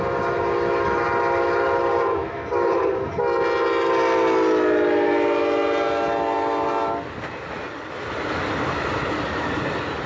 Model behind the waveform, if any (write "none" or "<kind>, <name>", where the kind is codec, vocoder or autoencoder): none